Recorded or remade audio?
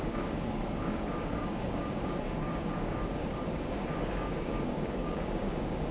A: remade